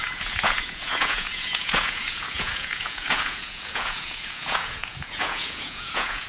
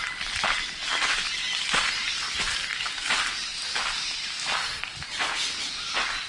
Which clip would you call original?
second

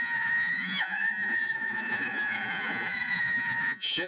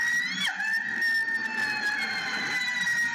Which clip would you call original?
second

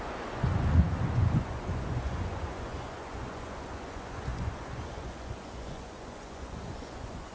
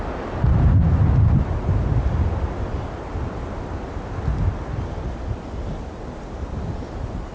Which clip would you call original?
second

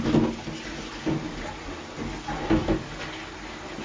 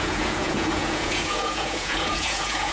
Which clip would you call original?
first